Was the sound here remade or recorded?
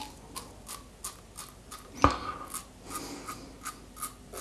recorded